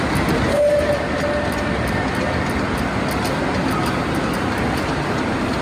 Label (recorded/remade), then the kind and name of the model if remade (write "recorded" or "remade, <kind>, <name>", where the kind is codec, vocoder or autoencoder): recorded